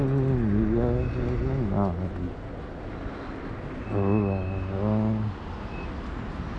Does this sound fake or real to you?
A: real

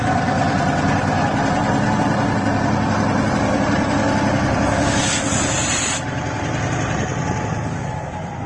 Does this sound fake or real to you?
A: real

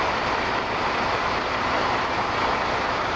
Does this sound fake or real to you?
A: real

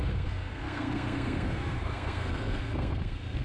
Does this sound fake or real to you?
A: fake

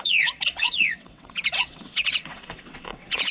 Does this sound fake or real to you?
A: fake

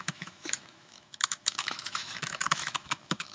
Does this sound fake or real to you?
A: fake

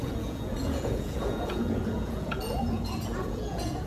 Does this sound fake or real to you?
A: fake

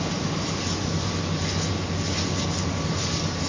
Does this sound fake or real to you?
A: real